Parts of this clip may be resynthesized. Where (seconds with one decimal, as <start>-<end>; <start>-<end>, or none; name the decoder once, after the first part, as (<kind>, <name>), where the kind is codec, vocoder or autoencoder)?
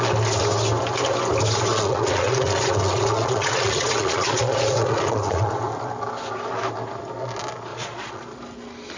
1.7-5.5 (vocoder, Vocos); 7.7-8.4